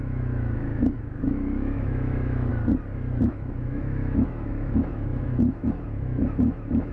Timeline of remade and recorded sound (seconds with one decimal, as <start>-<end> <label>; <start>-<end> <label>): 0.0-2.5 remade; 2.5-3.3 recorded; 3.3-6.9 remade